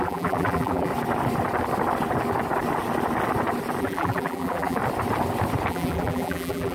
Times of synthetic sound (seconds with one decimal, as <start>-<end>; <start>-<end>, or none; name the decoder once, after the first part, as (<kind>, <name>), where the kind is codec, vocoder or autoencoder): 0.0-0.9 (vocoder, BigVGAN v2); 3.8-4.8; 5.7-6.7